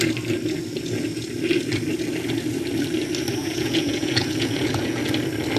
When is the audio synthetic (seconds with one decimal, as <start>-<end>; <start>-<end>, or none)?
3.4-5.0